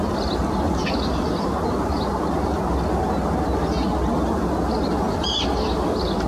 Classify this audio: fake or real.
real